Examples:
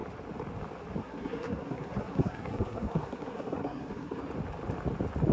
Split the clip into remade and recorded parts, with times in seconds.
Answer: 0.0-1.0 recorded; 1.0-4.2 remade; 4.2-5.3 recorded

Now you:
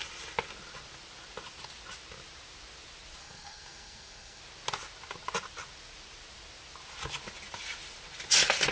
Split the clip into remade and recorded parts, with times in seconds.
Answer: 0.0-3.2 recorded; 3.2-4.4 remade; 4.4-8.7 recorded

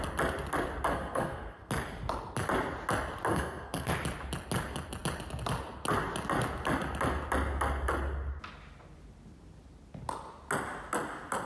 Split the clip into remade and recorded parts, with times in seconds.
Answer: 0.0-0.9 recorded; 0.9-1.7 remade; 1.7-3.3 recorded; 3.3-3.9 remade; 3.9-11.5 recorded